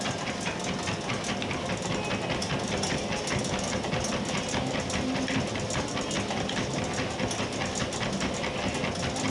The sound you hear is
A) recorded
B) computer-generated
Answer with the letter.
A